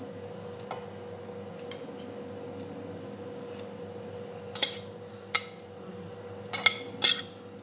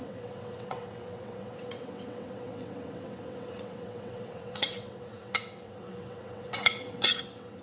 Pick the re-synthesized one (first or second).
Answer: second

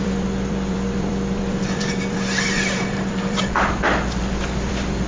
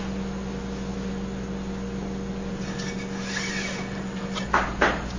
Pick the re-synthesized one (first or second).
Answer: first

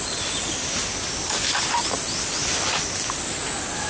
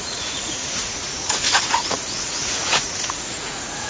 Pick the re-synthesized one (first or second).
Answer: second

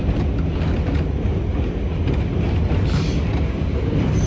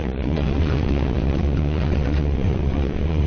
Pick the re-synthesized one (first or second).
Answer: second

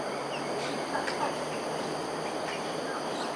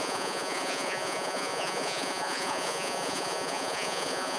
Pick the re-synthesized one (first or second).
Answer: second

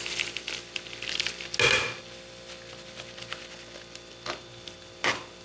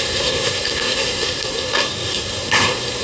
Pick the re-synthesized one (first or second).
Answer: second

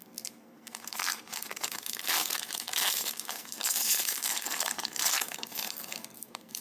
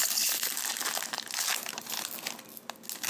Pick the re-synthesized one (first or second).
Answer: first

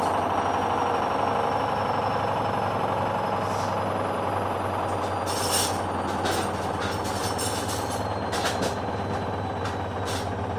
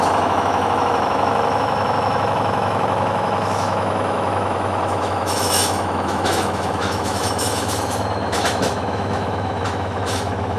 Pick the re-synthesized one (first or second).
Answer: second